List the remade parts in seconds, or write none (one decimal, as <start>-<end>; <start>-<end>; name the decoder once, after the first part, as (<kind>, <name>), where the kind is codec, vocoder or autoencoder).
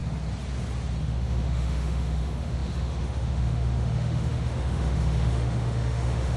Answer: 1.0-6.4 (autoencoder, DAC-VAE)